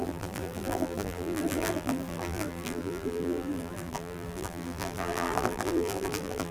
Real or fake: fake